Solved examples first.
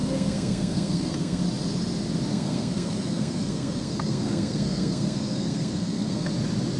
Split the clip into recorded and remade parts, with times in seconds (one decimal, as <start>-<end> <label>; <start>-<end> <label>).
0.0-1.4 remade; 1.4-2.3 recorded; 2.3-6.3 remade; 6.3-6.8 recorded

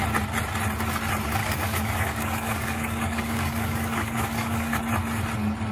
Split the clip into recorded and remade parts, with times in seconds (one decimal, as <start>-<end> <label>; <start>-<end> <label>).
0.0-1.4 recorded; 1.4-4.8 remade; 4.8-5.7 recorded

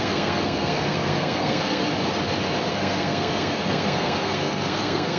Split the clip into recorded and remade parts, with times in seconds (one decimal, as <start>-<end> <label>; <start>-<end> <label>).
0.0-1.8 remade; 1.8-2.7 recorded; 2.7-5.2 remade

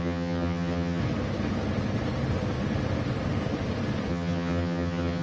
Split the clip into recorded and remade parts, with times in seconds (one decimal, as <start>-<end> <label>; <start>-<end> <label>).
0.0-1.0 remade; 1.0-4.1 recorded; 4.1-5.2 remade

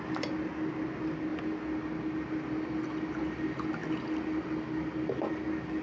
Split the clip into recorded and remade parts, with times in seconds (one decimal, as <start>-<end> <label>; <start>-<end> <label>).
0.0-5.8 recorded

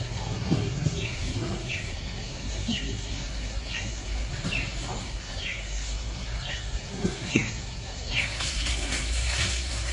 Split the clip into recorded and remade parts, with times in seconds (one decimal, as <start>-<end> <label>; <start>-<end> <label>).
0.0-4.3 remade; 4.3-5.0 recorded; 5.0-9.9 remade

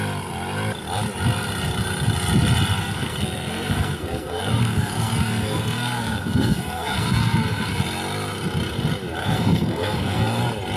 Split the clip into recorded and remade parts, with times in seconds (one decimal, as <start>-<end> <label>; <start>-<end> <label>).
0.0-2.8 recorded; 2.8-7.8 remade; 7.8-9.2 recorded; 9.2-10.4 remade; 10.4-10.8 recorded